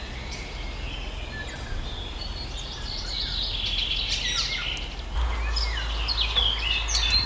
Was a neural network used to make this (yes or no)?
no